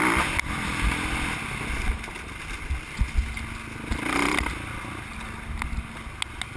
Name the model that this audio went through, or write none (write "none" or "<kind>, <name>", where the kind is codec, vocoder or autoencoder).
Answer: none